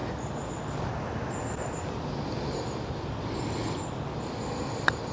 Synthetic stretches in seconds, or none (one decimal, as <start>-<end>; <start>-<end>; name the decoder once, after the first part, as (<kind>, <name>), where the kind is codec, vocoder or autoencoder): none